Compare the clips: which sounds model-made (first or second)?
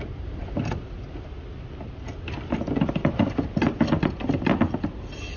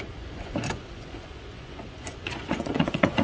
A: second